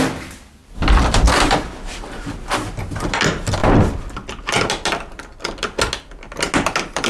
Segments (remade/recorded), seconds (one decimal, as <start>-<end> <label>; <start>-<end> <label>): 0.0-7.1 recorded